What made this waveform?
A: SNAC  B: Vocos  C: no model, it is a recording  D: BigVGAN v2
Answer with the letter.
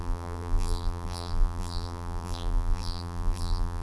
D